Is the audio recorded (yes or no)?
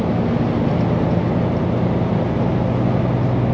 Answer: yes